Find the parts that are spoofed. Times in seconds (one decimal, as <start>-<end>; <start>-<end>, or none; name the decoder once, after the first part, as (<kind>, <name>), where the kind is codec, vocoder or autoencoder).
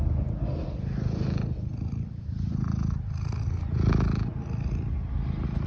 none